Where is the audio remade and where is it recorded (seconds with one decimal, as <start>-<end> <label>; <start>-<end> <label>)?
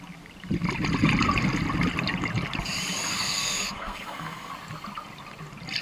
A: 0.0-3.1 recorded; 3.1-4.5 remade; 4.5-5.8 recorded